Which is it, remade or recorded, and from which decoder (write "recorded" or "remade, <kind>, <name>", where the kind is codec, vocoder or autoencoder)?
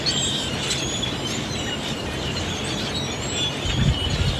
recorded